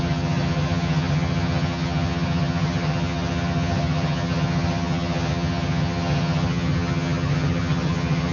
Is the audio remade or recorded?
remade